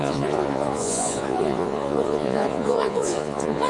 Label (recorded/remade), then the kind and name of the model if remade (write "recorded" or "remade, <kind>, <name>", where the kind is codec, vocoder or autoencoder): remade, vocoder, Vocos